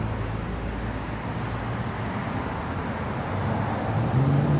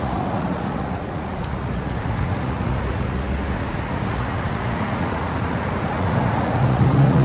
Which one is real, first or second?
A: first